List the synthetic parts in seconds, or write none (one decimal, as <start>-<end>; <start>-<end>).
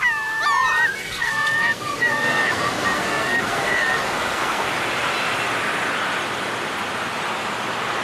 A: 1.0-4.7